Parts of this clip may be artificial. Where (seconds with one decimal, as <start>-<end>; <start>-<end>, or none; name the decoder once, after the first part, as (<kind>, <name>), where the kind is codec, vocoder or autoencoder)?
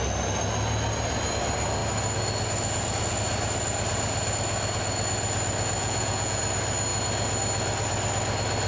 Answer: 5.8-6.4 (vocoder, Vocos)